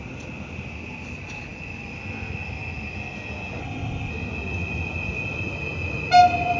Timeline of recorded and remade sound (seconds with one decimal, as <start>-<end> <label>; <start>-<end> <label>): 0.0-3.6 recorded; 3.6-4.1 remade; 4.1-6.6 recorded